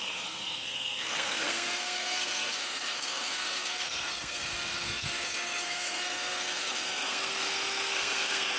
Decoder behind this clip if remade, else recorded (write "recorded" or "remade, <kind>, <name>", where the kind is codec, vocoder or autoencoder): remade, codec, SNAC